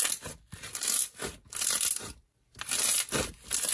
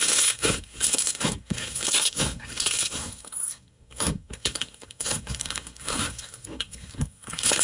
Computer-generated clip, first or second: second